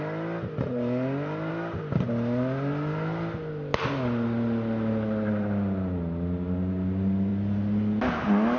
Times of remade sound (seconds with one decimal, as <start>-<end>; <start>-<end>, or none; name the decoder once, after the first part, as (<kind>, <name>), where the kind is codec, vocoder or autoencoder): none